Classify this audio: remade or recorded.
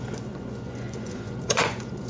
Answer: remade